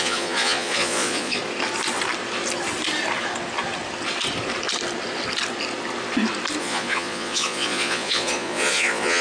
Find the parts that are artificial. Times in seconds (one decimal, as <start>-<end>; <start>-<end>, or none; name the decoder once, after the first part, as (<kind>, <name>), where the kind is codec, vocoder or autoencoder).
0.0-1.4 (vocoder, Vocos); 6.6-9.2